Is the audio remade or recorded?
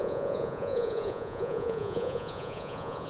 remade